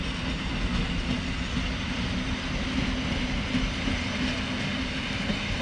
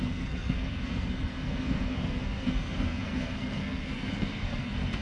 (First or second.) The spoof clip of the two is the second